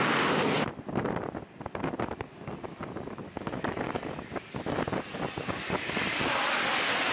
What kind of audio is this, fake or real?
real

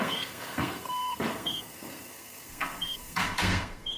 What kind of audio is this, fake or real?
fake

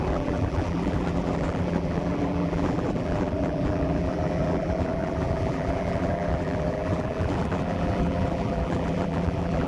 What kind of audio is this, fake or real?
fake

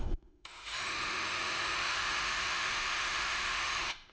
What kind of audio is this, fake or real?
fake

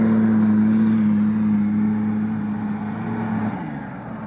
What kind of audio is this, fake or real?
real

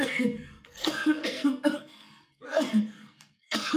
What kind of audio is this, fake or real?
fake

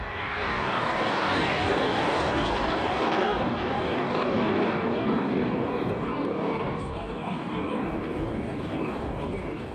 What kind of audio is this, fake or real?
fake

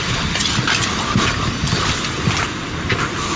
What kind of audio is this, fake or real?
real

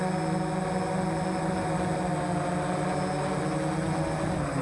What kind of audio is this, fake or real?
real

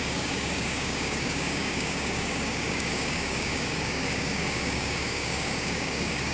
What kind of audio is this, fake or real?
fake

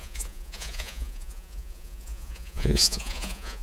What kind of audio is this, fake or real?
fake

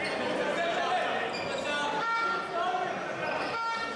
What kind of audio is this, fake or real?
real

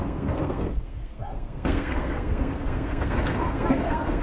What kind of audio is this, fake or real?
fake